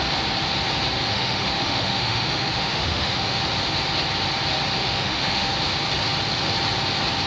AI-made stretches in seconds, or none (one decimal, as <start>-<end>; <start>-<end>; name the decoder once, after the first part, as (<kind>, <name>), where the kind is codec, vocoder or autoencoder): 1.1-3.4 (autoencoder, DAC-VAE); 4.8-5.5